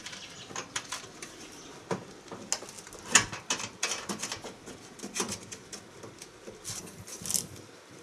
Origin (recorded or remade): recorded